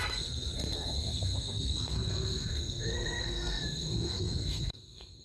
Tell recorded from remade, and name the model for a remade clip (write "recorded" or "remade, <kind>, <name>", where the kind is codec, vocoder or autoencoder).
remade, codec, SNAC